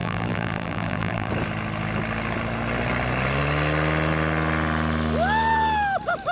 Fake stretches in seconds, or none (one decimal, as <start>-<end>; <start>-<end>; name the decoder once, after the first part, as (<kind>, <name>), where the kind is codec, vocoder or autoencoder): 0.0-1.3 (vocoder, BigVGAN v2)